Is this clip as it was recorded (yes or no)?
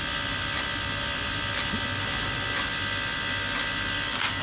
yes